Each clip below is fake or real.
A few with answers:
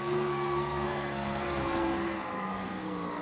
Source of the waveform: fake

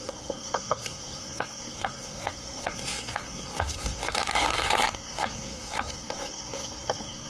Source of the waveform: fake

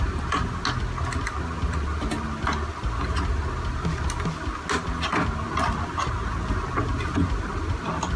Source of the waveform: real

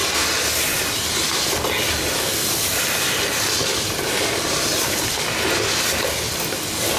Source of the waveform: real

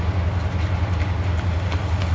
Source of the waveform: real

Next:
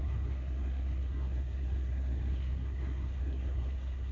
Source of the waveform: fake